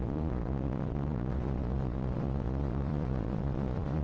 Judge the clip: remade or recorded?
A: remade